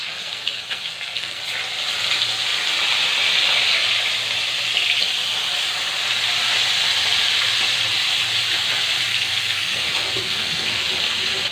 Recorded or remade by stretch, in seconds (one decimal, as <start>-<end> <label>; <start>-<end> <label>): 0.0-1.4 remade; 1.4-9.1 recorded; 9.1-10.9 remade; 10.9-11.5 recorded